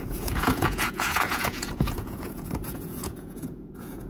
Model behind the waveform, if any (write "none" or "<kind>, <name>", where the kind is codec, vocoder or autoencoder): vocoder, Vocos